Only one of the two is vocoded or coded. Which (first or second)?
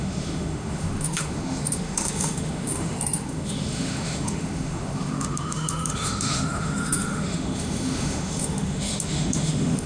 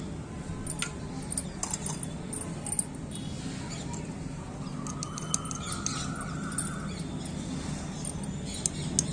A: first